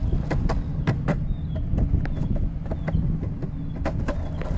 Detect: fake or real real